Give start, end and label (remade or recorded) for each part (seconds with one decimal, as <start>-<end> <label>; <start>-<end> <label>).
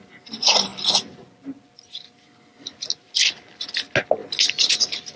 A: 0.0-5.2 recorded